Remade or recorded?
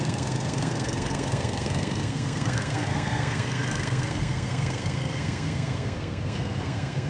remade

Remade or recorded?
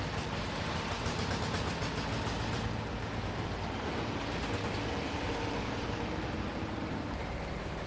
recorded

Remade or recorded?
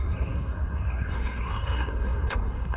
remade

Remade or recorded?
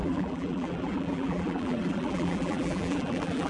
remade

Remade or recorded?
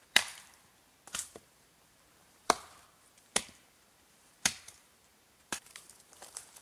remade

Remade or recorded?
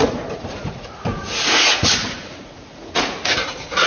remade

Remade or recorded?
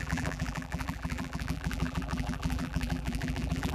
remade